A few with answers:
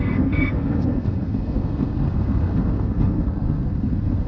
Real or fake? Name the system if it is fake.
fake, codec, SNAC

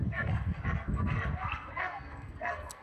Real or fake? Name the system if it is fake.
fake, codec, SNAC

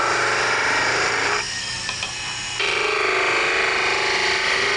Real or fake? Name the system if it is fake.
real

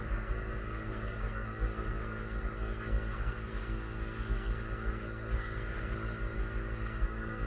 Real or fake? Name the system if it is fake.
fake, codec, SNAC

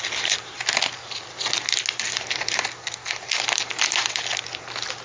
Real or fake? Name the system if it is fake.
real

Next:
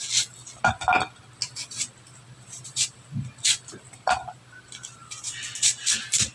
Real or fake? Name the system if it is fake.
real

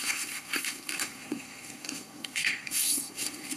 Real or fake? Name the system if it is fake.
fake, codec, SNAC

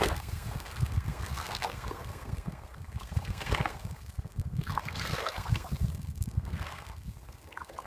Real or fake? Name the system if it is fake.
fake, codec, SNAC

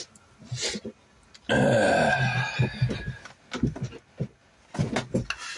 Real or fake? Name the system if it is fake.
real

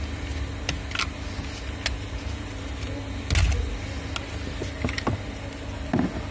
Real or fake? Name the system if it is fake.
real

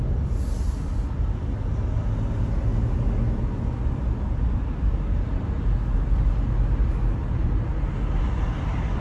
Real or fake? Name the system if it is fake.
real